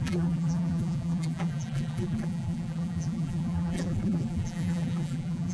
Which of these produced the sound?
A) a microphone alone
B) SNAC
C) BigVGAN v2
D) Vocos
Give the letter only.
C